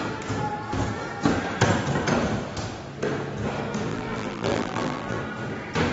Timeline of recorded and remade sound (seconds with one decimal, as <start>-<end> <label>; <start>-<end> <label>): 0.0-3.9 recorded; 3.9-5.2 remade; 5.2-5.9 recorded